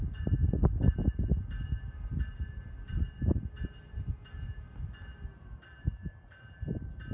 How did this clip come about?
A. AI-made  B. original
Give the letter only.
B